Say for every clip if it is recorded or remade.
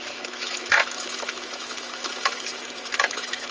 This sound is remade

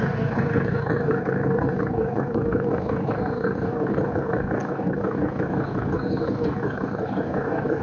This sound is remade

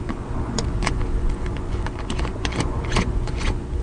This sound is remade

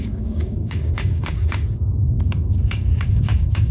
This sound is remade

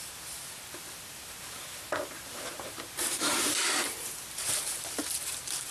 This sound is remade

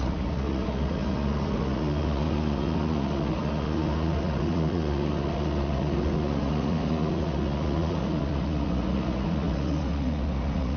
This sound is remade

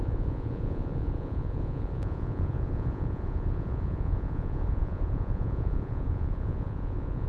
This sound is remade